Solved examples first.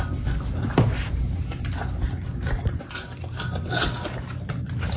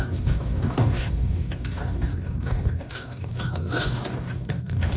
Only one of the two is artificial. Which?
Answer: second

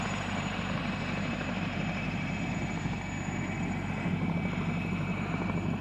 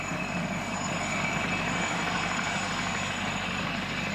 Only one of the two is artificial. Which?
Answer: second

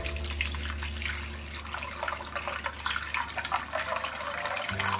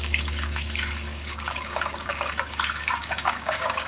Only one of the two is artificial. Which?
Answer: second